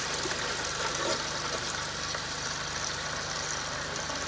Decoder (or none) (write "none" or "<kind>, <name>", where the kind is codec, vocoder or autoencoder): none